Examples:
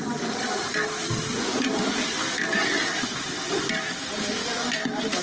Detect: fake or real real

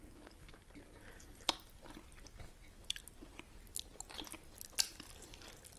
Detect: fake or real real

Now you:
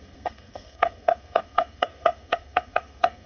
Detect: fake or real fake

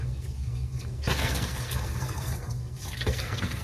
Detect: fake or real fake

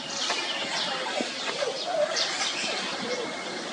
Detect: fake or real real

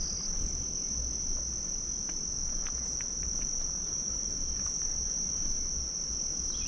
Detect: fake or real real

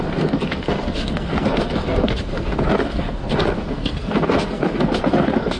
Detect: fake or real fake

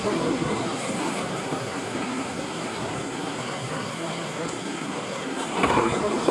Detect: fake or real fake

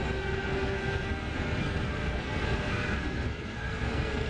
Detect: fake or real fake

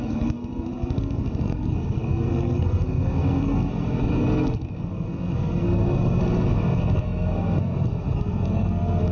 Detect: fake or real fake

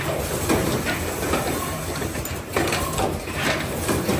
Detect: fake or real real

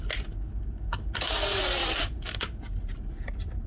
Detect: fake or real real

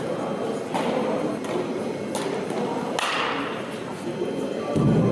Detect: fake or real real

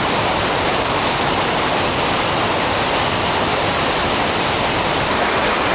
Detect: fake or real real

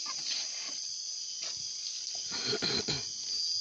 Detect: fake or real real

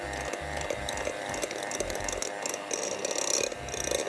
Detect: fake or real real